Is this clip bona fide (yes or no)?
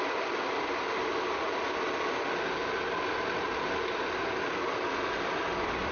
yes